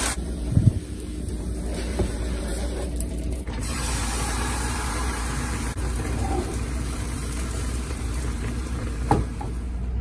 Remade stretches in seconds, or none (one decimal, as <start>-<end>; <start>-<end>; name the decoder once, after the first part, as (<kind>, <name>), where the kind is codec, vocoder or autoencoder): 0.0-10.0 (vocoder, BigVGAN v2)